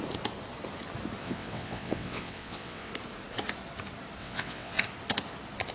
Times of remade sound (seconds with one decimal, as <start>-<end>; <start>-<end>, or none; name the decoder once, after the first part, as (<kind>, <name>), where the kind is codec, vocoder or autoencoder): 1.2-2.9 (vocoder, WaveNeXt); 4.2-4.8